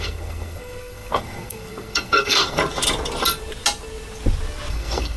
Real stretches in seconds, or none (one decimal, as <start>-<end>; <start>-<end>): 2.6-4.7